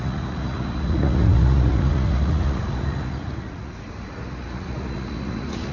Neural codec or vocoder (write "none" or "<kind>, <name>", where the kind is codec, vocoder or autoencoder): vocoder, Vocos